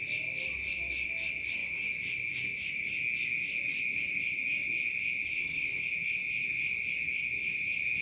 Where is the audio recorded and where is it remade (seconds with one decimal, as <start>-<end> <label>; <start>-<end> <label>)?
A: 0.0-5.3 recorded; 5.3-5.8 remade; 5.8-8.0 recorded